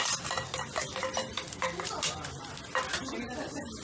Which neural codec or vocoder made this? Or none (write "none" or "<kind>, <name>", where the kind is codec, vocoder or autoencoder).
none